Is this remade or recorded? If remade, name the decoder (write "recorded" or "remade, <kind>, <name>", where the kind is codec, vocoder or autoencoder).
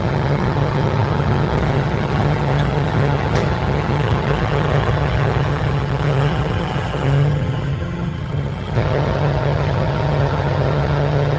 remade, vocoder, HiFi-GAN